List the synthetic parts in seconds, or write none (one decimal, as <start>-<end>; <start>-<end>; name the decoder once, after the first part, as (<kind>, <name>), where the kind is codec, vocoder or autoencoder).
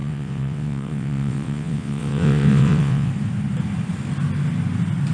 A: 0.0-3.1 (vocoder, WaveNeXt)